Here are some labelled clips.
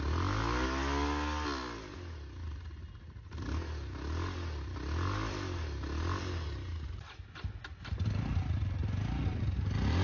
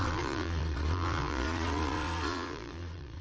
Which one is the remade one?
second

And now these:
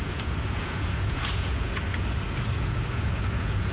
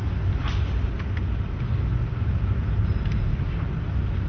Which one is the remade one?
first